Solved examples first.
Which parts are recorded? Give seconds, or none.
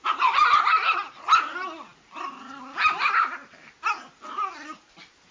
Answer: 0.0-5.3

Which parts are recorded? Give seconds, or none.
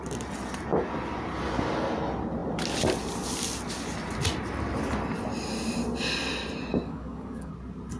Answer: 0.0-6.7; 7.5-8.0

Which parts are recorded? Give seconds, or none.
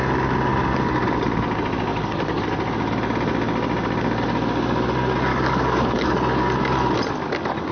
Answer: 0.0-1.9; 2.4-5.3; 6.5-7.7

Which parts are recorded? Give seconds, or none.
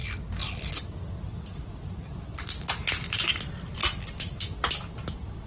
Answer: 0.0-5.5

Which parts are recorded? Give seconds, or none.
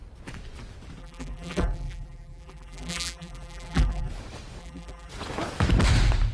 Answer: 0.0-1.0; 4.1-4.6; 5.1-6.3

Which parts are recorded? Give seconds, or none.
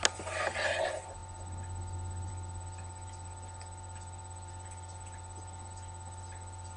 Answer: 0.0-6.8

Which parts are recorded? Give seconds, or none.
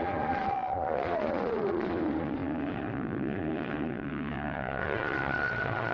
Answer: none